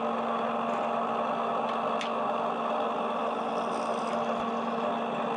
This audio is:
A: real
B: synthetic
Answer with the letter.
A